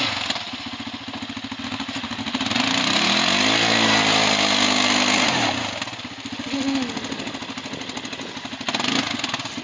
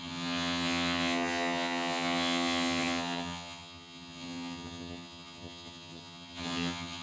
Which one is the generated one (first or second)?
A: second